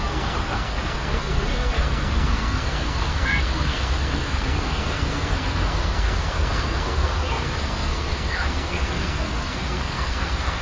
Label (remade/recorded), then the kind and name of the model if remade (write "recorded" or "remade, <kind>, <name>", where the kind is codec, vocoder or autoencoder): remade, codec, SNAC